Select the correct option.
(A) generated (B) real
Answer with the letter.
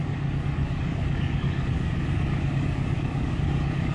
A